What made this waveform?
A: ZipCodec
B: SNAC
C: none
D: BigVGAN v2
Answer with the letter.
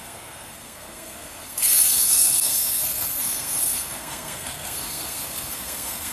B